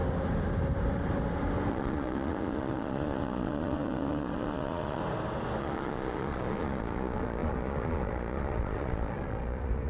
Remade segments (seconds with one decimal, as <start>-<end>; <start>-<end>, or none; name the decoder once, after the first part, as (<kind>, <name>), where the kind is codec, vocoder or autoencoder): 1.7-5.0 (vocoder, Vocos); 5.6-9.9